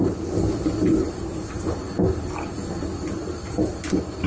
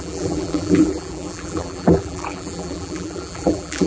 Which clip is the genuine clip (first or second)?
first